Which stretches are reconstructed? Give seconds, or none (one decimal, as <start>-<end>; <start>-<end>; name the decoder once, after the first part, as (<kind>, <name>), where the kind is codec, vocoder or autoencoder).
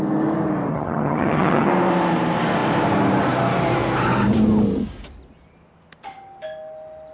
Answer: 0.7-1.7 (vocoder, HiFi-GAN)